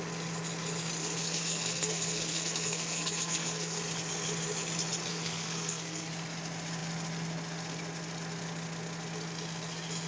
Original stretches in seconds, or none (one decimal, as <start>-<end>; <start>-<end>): 0.0-1.0; 3.8-5.1; 6.1-10.1